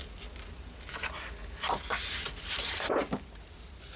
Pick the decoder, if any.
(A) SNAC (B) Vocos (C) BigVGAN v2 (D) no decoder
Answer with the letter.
D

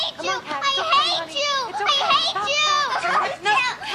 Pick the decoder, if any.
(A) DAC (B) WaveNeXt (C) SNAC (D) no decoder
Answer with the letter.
D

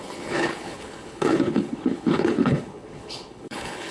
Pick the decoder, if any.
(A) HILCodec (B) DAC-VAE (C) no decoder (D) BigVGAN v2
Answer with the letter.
A